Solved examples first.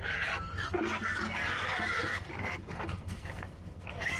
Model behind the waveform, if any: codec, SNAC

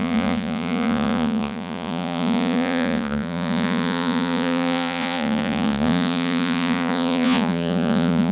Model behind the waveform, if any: vocoder, Vocos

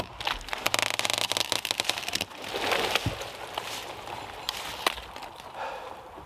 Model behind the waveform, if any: none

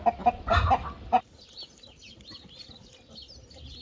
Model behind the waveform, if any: none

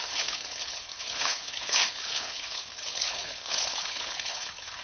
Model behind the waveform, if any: codec, HILCodec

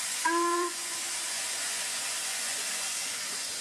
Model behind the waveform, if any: vocoder, Vocos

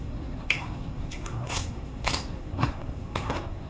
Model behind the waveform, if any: codec, SNAC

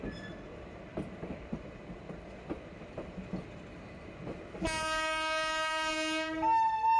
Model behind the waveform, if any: none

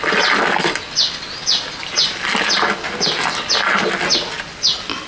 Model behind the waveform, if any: none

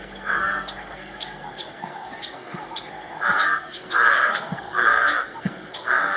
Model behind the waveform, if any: codec, SNAC